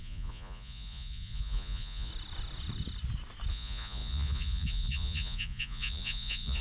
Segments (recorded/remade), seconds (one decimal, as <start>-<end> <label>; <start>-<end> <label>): 0.0-2.1 remade; 2.1-3.5 recorded; 3.5-6.6 remade